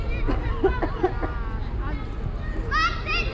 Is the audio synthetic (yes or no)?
no